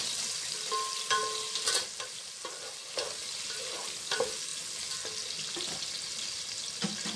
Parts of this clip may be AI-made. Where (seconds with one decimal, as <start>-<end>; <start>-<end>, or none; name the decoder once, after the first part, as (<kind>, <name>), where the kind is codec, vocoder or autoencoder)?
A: none